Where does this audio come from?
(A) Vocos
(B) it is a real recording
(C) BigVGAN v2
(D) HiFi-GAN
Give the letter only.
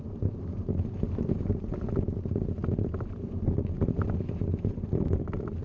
C